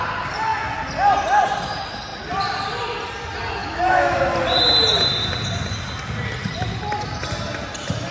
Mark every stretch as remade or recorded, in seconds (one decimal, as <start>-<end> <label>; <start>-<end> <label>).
0.0-3.6 recorded; 3.6-4.2 remade; 4.2-8.1 recorded

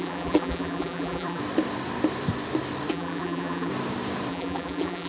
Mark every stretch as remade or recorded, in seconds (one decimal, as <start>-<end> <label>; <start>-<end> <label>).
0.0-1.4 remade; 1.4-2.9 recorded; 2.9-3.7 remade; 3.7-4.3 recorded; 4.3-5.1 remade

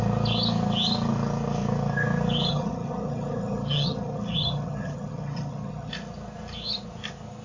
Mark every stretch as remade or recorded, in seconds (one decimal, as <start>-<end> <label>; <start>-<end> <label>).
0.0-2.5 recorded; 2.5-5.9 remade; 5.9-7.4 recorded

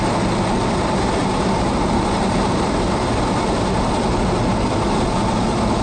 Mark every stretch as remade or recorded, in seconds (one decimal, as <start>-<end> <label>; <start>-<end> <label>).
0.0-1.2 recorded; 1.2-3.9 remade; 3.9-5.8 recorded

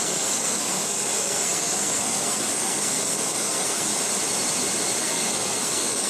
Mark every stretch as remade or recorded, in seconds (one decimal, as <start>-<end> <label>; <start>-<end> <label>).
0.0-3.9 remade; 3.9-5.0 recorded; 5.0-6.1 remade

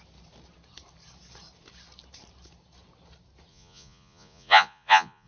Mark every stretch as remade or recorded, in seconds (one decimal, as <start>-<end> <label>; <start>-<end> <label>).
0.0-3.5 recorded; 3.5-5.3 remade

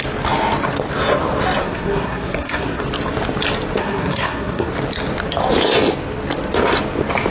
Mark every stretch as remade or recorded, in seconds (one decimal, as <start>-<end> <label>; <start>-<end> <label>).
0.0-1.6 recorded; 1.6-2.8 remade; 2.8-3.8 recorded; 3.8-4.7 remade; 4.7-7.3 recorded